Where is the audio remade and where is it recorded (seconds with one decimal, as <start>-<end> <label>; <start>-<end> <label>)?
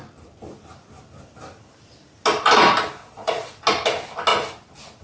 0.0-3.0 recorded; 3.0-3.6 remade; 3.6-5.0 recorded